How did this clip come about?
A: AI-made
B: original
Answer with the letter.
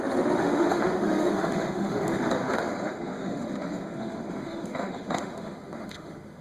A